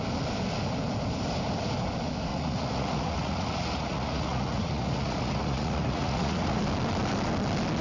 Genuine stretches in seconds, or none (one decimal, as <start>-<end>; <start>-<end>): 0.0-2.3; 6.6-7.8